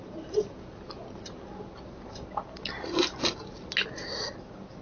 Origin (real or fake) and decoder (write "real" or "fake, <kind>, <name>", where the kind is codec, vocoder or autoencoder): real